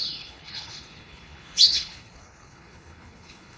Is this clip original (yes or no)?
no